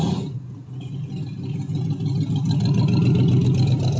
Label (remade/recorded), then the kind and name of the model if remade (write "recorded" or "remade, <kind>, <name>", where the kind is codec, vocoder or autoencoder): recorded